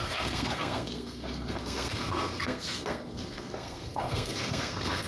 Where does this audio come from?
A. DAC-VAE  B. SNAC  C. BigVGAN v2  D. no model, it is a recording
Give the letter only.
B